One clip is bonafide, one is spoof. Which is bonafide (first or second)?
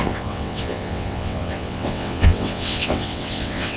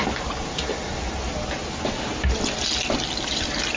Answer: second